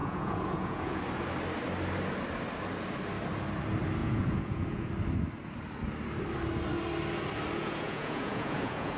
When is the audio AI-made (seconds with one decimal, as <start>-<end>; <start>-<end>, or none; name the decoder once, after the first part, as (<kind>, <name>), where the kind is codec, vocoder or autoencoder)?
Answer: 0.0-1.0 (vocoder, Vocos); 4.0-4.9; 7.6-9.0